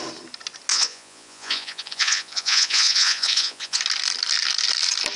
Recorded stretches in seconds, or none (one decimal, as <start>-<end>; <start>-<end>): 0.0-0.7; 3.8-5.2